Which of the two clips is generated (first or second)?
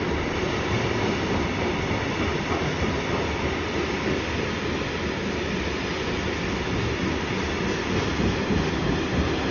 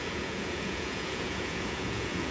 second